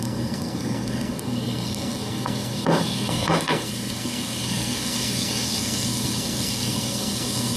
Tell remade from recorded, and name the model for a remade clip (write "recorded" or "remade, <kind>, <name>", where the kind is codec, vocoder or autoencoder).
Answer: remade, codec, SNAC